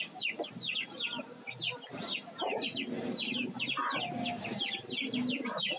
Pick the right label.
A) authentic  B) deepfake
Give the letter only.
A